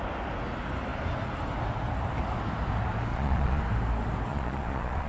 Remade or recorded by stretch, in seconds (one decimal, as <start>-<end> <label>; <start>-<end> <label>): 0.0-3.1 recorded; 3.1-3.6 remade; 3.6-4.3 recorded; 4.3-5.1 remade